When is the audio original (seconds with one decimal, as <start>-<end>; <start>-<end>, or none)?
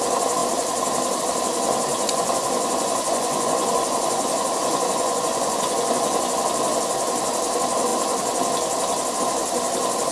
0.0-1.9; 6.4-10.1